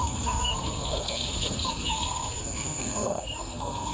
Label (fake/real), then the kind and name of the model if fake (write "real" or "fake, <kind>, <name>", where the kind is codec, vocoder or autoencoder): fake, codec, SNAC